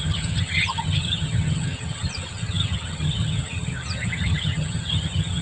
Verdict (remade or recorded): remade